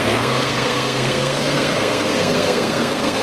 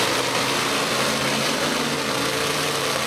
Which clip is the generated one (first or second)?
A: first